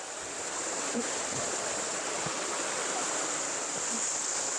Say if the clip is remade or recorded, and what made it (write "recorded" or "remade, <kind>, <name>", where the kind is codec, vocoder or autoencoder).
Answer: recorded